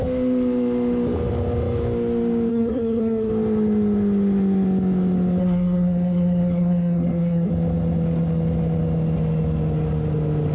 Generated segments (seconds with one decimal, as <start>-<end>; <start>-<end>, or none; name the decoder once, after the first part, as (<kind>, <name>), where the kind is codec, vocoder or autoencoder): 2.5-3.3 (codec, SNAC); 5.4-7.5